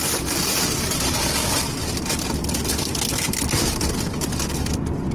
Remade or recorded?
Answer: remade